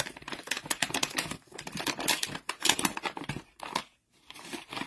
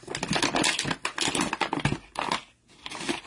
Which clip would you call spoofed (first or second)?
first